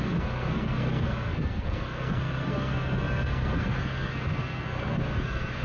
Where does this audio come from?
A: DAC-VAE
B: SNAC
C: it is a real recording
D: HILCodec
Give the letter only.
B